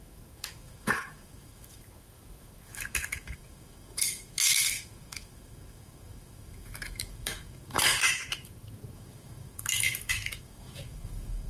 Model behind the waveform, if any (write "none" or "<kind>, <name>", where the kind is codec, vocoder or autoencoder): autoencoder, DAC-VAE